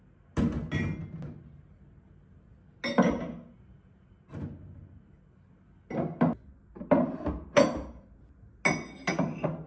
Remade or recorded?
recorded